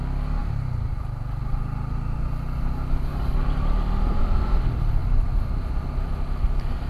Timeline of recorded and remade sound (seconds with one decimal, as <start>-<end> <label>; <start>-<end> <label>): 0.0-6.9 recorded

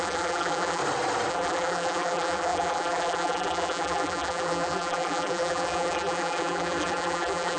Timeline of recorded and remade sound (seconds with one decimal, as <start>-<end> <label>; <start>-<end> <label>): 0.0-0.8 remade; 0.8-1.3 recorded; 1.3-7.6 remade

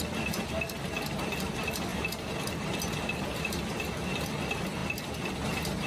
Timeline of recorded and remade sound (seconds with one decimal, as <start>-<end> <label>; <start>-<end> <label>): 0.0-1.9 recorded; 1.9-2.4 remade; 2.4-5.9 recorded

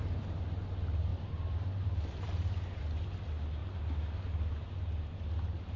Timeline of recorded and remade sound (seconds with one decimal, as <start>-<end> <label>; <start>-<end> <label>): 0.0-1.1 recorded; 1.1-2.8 remade; 2.8-5.8 recorded

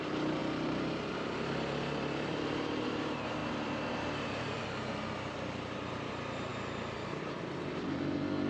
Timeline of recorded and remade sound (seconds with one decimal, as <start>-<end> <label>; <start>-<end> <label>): 0.0-0.4 recorded; 0.4-3.0 remade; 3.0-3.4 recorded; 3.4-6.1 remade; 6.1-8.5 recorded